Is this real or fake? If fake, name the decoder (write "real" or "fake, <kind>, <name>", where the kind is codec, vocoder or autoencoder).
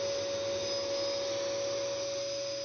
real